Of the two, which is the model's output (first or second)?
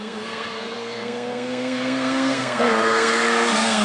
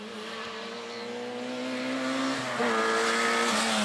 first